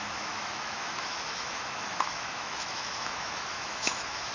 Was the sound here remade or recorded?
remade